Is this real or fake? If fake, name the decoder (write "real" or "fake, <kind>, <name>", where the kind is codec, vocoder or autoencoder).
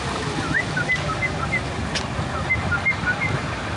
real